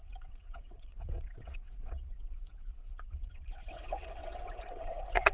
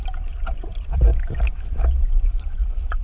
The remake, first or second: first